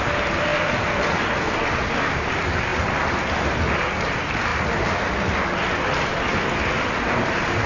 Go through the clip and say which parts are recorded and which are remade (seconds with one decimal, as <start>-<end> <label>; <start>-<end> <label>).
0.0-7.7 recorded